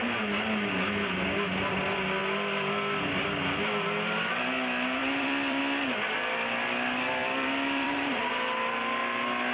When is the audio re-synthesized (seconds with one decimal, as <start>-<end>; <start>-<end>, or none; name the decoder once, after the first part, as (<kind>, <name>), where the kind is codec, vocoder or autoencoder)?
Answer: 5.0-5.6 (vocoder, BigVGAN v2); 7.2-8.2